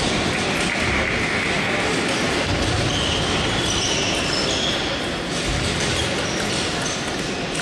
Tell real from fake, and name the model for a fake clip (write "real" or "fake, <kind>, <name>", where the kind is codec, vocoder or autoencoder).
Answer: real